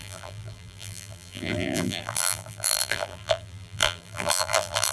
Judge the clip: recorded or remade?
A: remade